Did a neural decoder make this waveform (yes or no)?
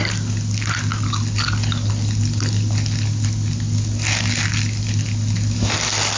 no